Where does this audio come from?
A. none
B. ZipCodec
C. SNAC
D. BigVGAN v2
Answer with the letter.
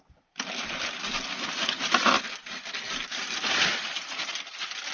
A